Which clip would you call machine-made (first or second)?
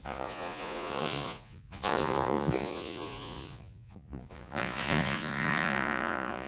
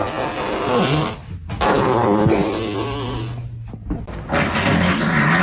first